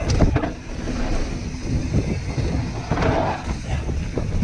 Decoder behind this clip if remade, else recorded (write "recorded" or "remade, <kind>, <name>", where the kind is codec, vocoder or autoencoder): recorded